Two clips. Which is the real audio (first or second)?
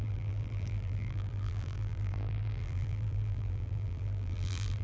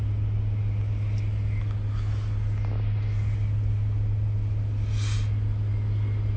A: second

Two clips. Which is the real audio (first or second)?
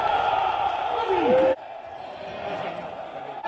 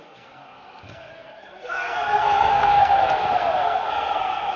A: first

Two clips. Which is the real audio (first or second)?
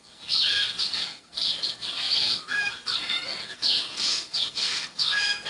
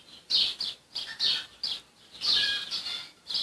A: second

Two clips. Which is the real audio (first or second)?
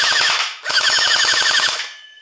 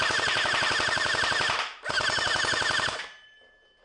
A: second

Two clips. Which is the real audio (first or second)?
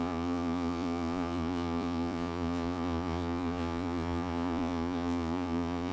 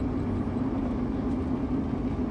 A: second